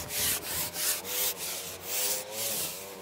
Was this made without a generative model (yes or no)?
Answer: yes